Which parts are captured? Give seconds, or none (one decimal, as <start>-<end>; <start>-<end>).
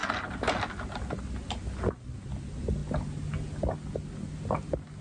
0.0-5.0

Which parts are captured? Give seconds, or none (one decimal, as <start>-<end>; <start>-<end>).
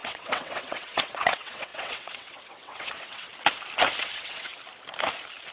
3.3-4.0; 4.5-5.5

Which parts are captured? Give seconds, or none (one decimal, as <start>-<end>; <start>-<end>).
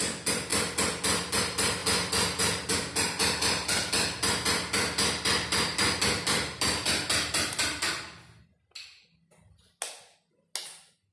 0.0-11.1